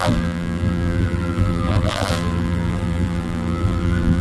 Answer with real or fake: fake